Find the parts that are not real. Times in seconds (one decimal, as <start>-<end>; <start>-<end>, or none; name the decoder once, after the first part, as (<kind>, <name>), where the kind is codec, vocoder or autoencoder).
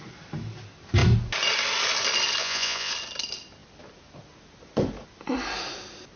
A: 2.4-2.9 (vocoder, Vocos)